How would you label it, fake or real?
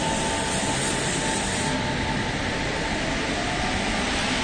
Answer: real